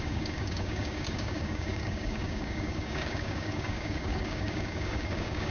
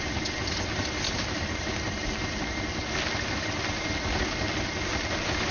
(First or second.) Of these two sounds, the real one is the second